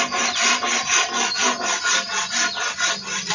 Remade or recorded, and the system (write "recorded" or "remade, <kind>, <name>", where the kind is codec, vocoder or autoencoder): recorded